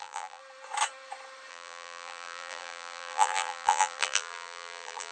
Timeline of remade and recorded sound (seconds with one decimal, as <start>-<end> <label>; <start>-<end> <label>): 0.0-0.4 remade; 0.4-1.5 recorded; 1.5-5.1 remade